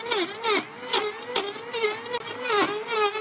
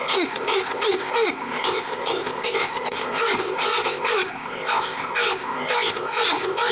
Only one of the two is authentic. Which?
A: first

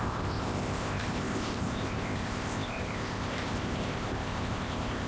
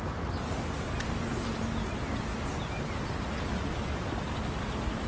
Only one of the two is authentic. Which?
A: second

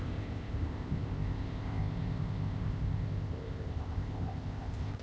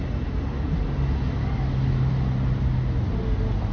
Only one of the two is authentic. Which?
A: second